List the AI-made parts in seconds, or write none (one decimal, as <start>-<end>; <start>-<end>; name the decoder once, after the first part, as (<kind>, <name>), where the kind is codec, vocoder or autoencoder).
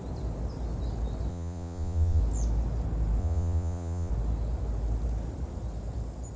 1.3-2.2 (vocoder, Vocos); 3.2-4.1